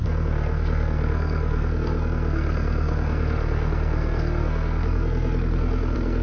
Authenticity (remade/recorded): remade